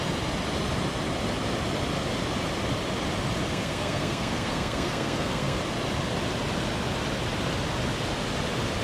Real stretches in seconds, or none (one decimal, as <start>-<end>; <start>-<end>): 0.0-3.5; 5.6-8.8